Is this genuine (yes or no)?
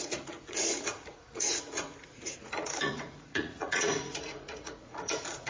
no